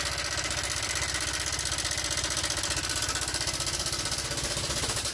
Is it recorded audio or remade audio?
recorded